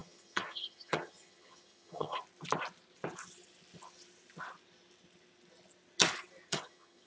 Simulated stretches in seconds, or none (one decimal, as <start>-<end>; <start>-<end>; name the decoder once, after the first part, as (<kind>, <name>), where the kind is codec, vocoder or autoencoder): 0.0-2.2 (vocoder, HiFi-GAN); 6.5-7.1